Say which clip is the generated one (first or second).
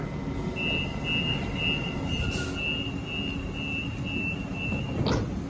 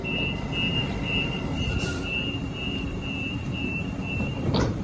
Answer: second